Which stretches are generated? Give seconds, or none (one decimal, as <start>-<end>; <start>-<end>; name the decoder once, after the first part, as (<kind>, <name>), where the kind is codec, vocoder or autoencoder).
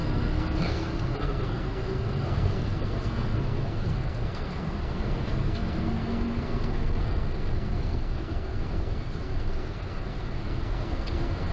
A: 0.0-11.5 (codec, SNAC)